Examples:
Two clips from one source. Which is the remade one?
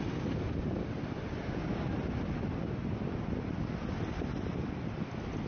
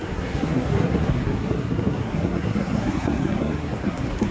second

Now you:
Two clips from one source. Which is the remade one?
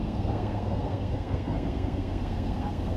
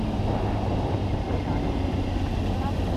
first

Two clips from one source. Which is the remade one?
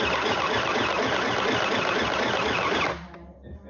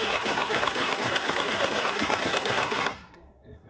second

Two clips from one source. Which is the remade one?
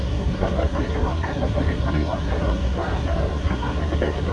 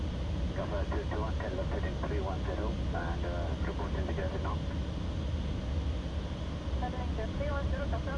first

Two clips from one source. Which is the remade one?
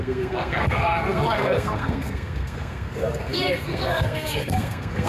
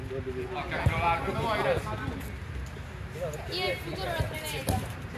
first